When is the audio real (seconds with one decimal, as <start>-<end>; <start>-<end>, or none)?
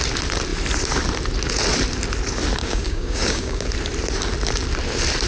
0.0-2.6; 3.7-5.3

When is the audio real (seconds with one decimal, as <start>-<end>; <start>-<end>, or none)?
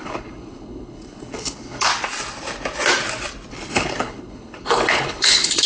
1.9-3.5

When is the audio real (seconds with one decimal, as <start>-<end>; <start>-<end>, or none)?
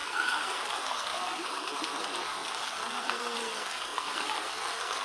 none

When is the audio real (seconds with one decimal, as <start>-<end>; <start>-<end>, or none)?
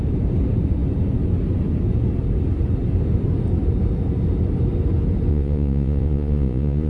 0.0-5.3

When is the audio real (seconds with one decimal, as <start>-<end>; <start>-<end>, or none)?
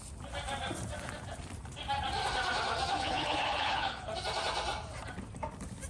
0.0-2.9; 4.1-5.9